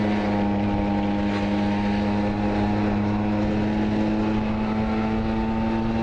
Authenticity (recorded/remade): recorded